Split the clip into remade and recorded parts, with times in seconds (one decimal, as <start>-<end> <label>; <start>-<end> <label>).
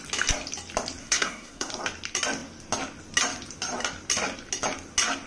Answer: 0.0-1.0 recorded; 1.0-1.7 remade; 1.7-5.3 recorded